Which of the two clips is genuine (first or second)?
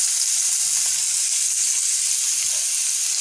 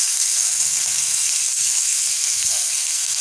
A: first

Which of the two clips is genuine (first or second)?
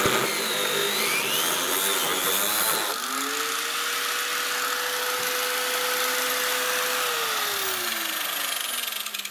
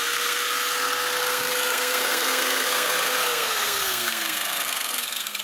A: first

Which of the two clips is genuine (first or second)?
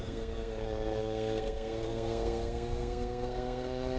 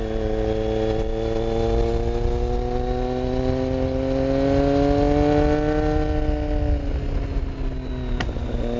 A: second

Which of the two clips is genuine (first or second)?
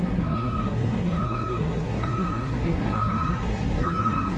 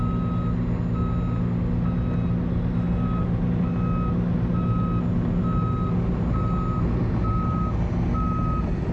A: second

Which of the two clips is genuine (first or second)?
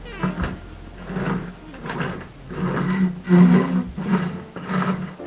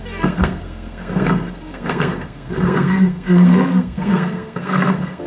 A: first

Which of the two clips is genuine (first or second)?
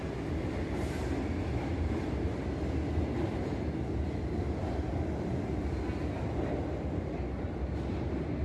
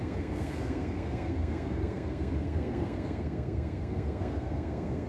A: first